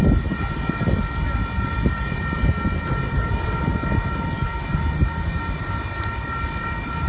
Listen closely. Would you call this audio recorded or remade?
recorded